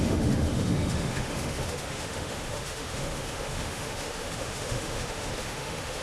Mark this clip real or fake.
fake